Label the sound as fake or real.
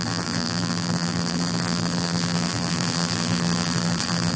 fake